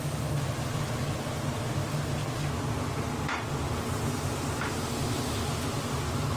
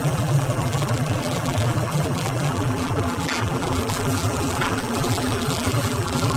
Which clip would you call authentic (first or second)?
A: first